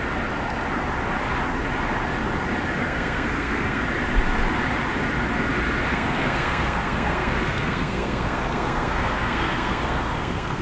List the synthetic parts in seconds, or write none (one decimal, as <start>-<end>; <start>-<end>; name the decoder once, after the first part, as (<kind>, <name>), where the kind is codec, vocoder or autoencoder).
2.8-3.8 (codec, SNAC); 5.9-10.6